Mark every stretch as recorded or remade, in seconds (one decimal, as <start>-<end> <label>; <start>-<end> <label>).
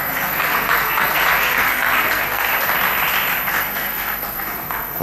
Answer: 0.0-2.5 remade; 2.5-3.5 recorded; 3.5-5.0 remade